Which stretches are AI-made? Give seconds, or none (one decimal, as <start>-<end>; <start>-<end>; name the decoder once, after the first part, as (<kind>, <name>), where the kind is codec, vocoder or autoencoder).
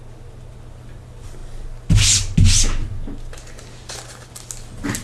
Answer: none